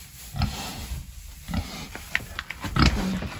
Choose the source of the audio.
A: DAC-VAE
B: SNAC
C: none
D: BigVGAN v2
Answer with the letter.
C